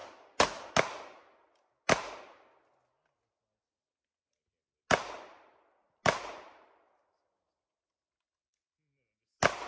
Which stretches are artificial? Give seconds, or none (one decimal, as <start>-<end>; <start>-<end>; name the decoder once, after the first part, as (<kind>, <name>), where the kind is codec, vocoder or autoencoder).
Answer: none